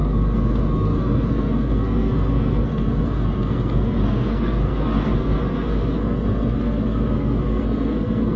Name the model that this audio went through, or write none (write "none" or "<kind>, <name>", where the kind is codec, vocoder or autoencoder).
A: codec, SNAC